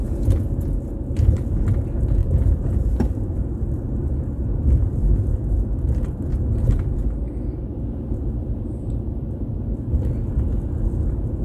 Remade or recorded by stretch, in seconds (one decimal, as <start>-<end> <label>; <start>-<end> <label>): 0.0-2.2 recorded; 2.2-6.4 remade; 6.4-7.7 recorded; 7.7-9.5 remade; 9.5-11.4 recorded